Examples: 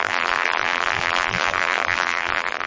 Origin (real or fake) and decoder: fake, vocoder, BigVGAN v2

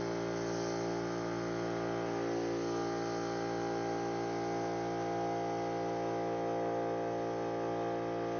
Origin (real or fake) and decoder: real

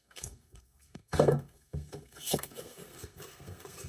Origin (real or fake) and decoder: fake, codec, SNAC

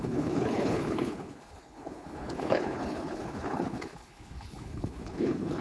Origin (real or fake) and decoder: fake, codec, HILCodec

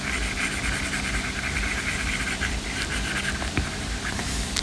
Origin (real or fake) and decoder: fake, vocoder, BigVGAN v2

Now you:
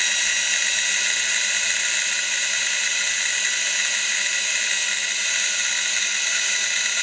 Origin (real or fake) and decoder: real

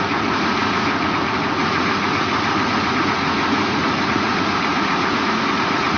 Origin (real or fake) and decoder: fake, vocoder, Vocos